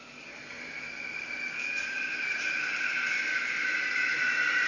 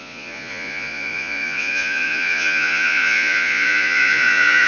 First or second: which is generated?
second